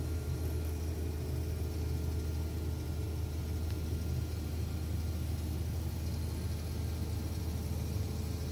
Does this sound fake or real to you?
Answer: real